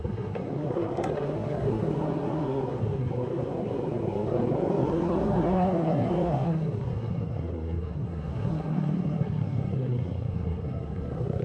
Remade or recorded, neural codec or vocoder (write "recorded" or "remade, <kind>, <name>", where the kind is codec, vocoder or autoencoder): remade, codec, SNAC